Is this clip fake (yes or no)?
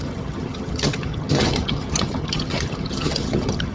yes